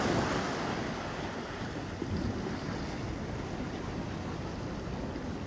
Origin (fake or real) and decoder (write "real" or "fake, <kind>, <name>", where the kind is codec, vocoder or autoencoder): real